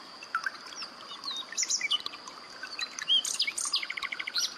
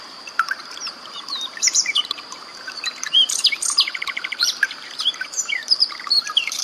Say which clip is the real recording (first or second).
first